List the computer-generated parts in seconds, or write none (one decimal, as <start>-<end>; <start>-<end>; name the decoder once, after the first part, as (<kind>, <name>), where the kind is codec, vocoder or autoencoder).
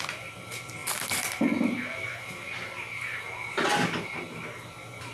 none